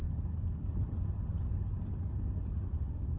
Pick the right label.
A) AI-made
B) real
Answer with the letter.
B